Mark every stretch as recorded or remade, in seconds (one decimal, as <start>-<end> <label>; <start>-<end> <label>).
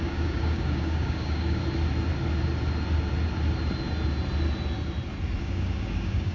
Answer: 0.0-1.6 remade; 1.6-5.4 recorded; 5.4-6.3 remade